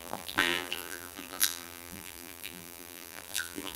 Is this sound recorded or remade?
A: remade